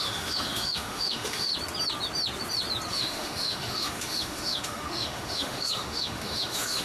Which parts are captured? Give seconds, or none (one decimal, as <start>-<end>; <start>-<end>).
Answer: 1.5-2.9